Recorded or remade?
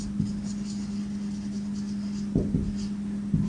recorded